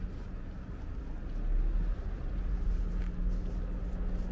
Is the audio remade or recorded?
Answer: recorded